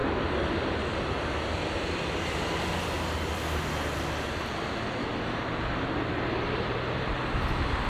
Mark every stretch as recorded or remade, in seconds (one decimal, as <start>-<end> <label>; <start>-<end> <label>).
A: 0.0-7.9 recorded